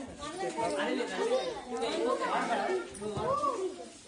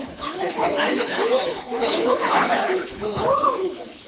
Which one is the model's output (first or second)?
second